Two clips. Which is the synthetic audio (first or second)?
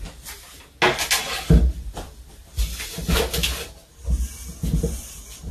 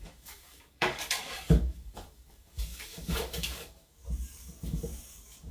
second